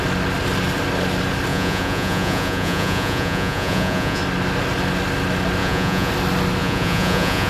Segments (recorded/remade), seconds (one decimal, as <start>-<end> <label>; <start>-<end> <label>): 0.0-1.5 recorded; 1.5-4.2 remade; 4.2-5.6 recorded; 5.6-6.1 remade; 6.1-6.6 recorded; 6.6-7.5 remade